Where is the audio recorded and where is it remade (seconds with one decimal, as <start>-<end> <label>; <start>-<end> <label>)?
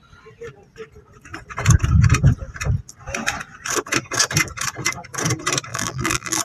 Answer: 0.0-5.7 recorded; 5.7-6.4 remade